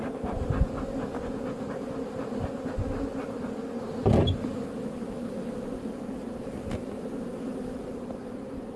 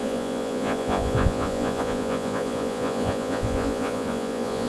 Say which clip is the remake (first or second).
second